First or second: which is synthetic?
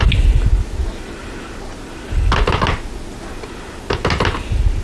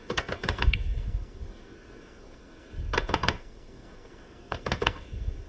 second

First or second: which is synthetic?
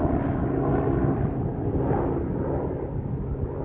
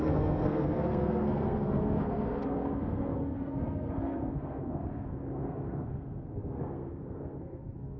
second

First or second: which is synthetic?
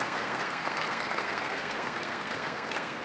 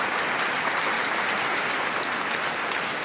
first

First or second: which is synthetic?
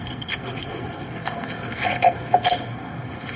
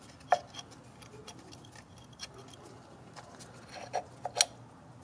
first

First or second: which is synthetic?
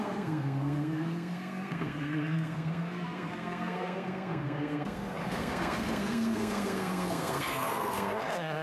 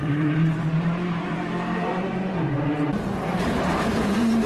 first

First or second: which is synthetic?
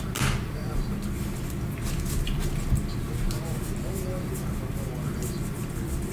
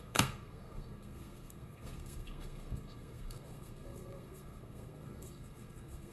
second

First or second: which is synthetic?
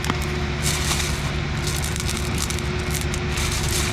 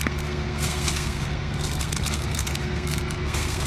second